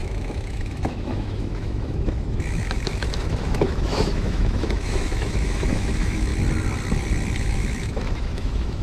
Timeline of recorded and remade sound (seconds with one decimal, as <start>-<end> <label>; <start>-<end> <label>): 0.0-6.3 remade; 6.3-7.4 recorded; 7.4-8.8 remade